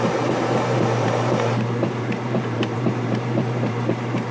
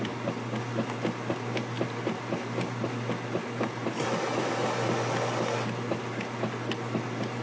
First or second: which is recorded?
second